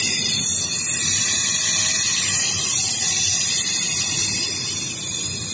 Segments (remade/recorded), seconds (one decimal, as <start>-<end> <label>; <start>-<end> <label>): 0.0-5.5 recorded